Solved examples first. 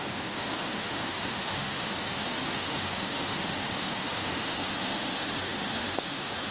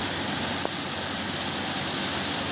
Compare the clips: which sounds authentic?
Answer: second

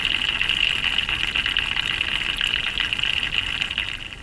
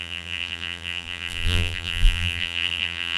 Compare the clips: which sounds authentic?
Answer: first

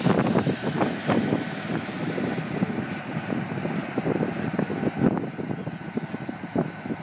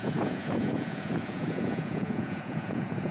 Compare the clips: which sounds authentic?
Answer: first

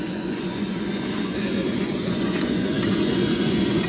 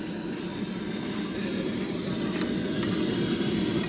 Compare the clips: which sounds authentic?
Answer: second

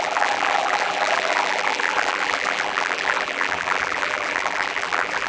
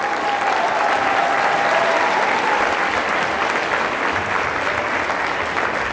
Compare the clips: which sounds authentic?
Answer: second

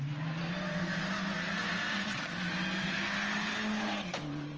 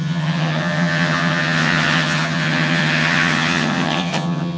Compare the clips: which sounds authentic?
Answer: first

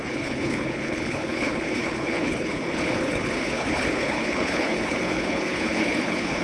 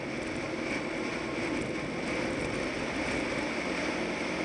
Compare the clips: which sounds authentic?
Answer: second